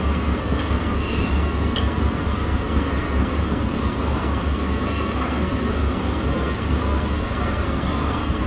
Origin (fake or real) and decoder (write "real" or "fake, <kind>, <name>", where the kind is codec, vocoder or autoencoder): fake, codec, SNAC